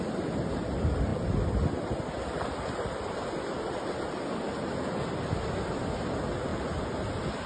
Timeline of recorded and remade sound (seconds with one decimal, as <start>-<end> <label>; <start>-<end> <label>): 0.0-7.5 recorded